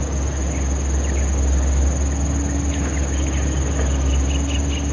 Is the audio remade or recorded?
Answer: remade